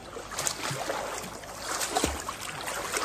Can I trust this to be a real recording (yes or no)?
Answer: yes